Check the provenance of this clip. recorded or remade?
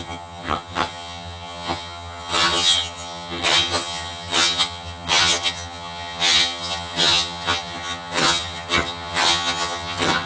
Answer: remade